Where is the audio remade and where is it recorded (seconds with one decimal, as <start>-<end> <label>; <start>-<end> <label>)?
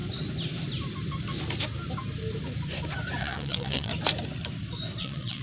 0.0-3.2 recorded; 3.2-3.9 remade; 3.9-5.0 recorded; 5.0-5.4 remade